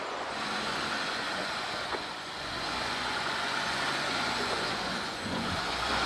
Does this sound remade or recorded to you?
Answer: remade